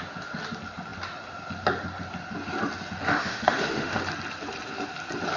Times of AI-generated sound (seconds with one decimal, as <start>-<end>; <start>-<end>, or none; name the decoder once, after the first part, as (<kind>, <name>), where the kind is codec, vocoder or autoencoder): 3.1-4.0 (autoencoder, DAC-VAE)